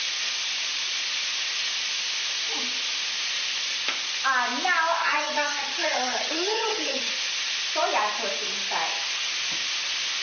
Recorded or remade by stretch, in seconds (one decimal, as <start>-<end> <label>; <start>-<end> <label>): 0.0-5.0 recorded; 5.0-7.1 remade; 7.1-10.2 recorded